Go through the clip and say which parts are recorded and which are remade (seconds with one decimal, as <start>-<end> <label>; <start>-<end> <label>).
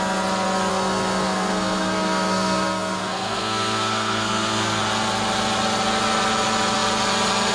0.0-0.7 recorded; 0.7-4.8 remade; 4.8-7.5 recorded